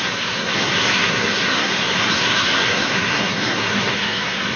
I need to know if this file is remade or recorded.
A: remade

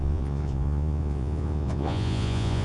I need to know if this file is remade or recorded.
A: remade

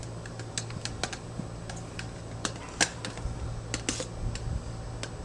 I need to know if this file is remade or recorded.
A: recorded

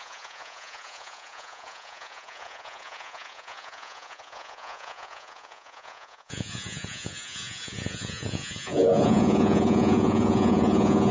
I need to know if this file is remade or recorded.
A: remade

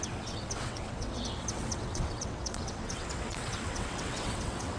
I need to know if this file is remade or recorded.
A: remade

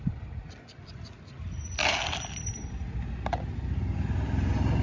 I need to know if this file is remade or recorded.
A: recorded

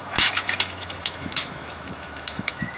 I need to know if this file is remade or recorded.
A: remade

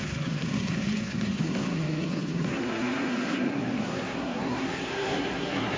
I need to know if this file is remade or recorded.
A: remade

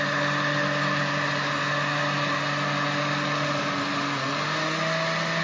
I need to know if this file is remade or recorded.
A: recorded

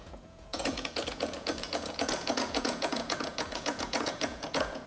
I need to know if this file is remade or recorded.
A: remade